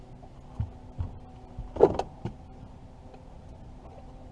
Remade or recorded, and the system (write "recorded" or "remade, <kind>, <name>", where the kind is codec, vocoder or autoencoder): recorded